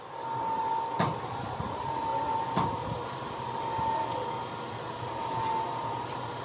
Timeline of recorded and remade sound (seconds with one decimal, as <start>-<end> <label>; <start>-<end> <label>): 0.0-6.4 recorded